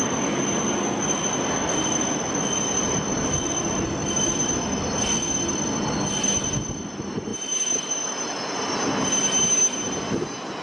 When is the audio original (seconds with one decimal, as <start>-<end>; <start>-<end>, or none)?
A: 0.0-10.6